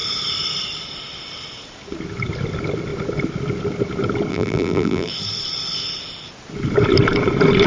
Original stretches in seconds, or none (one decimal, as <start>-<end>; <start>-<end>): 0.0-4.3; 5.1-7.7